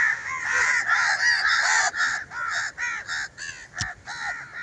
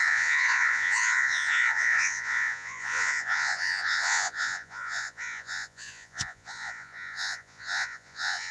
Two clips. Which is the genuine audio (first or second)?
first